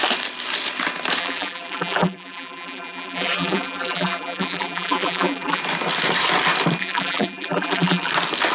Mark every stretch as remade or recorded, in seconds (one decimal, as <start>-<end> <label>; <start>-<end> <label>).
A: 0.0-1.2 recorded; 1.2-5.6 remade; 5.6-6.8 recorded; 6.8-8.1 remade; 8.1-8.5 recorded